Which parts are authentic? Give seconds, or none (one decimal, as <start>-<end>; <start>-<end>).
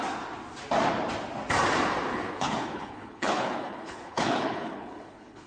0.0-2.1